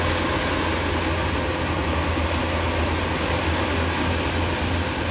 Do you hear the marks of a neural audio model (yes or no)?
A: no